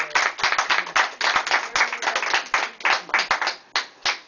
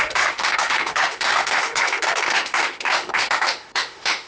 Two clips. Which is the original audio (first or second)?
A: first